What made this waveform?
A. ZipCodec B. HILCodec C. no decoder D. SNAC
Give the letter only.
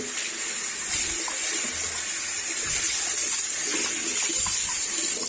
C